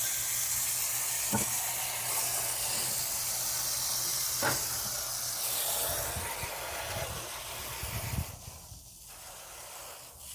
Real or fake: real